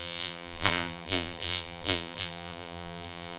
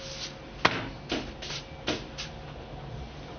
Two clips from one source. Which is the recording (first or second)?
second